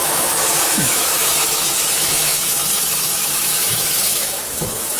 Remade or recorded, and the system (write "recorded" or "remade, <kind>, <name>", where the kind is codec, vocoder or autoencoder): remade, autoencoder, DAC-VAE